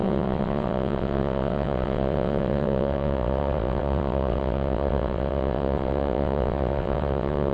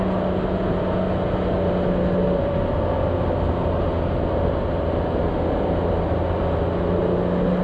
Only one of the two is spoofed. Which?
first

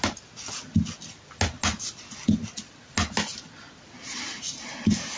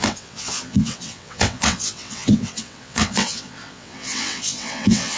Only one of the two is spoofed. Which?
second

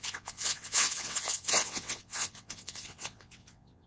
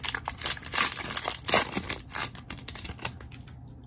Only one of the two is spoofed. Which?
first